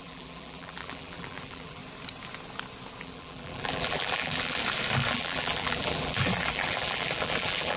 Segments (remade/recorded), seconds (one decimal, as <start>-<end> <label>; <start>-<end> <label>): 0.0-1.8 remade; 1.8-3.0 recorded; 3.0-4.6 remade; 4.6-5.1 recorded; 5.1-7.8 remade